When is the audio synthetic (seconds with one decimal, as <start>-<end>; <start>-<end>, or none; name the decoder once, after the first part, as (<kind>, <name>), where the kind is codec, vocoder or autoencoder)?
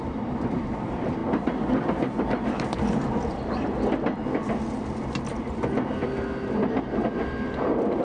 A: none